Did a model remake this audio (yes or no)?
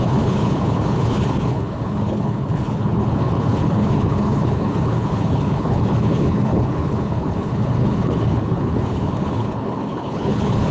yes